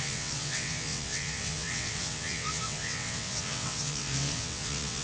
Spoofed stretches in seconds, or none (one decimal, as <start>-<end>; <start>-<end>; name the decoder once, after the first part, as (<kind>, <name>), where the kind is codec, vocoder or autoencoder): 0.0-5.0 (vocoder, WaveNeXt)